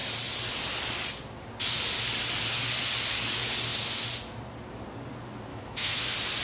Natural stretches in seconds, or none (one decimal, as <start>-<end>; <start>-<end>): 0.0-5.5; 6.0-6.4

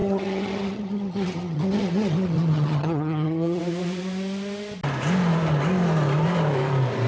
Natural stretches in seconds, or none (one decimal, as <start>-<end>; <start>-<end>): 3.6-7.1

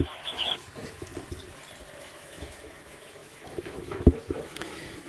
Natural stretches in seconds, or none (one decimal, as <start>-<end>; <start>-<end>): 1.1-2.0

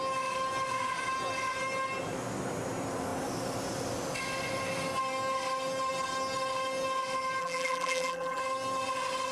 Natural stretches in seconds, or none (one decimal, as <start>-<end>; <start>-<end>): 0.0-7.4; 8.4-9.3

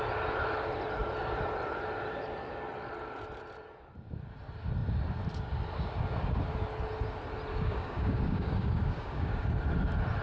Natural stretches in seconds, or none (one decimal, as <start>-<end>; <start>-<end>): 0.0-7.5; 9.5-10.2

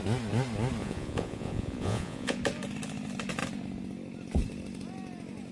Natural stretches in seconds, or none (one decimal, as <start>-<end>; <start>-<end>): 0.0-0.8; 2.4-5.5